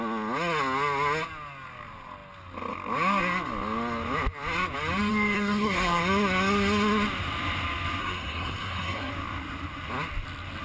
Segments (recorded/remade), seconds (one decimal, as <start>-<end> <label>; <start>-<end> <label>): 0.0-5.1 recorded; 5.1-6.0 remade; 6.0-8.0 recorded; 8.0-9.1 remade; 9.1-10.6 recorded